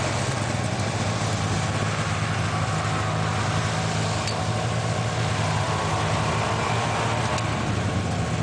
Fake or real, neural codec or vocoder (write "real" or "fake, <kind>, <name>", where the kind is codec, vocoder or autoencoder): real